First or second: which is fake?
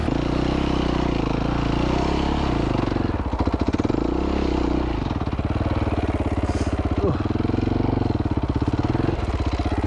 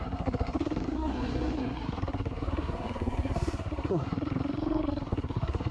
second